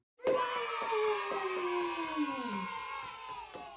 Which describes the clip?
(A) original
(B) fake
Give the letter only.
A